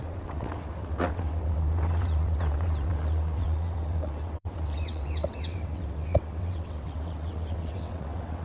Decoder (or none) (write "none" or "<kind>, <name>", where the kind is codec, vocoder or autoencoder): vocoder, WaveNeXt